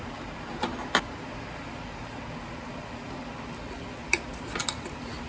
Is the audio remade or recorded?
recorded